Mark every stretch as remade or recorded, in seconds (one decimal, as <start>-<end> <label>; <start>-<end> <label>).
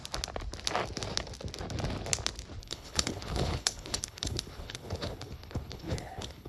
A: 0.0-2.6 recorded; 2.6-6.5 remade